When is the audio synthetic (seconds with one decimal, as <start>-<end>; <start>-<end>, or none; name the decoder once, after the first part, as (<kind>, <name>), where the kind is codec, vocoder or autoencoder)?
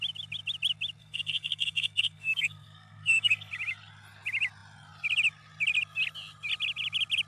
1.0-3.5 (codec, SNAC)